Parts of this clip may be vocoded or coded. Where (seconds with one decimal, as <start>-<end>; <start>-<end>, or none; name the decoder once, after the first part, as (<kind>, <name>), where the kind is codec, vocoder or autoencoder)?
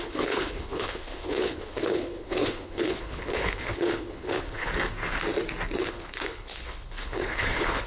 0.0-4.7 (codec, HILCodec); 5.9-7.9